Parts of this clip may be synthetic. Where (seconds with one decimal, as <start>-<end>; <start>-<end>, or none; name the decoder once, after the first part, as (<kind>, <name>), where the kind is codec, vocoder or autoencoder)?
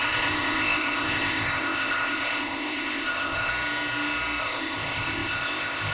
0.0-3.5 (codec, ZipCodec); 4.4-5.9